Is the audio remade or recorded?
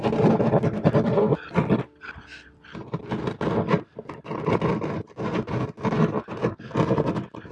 recorded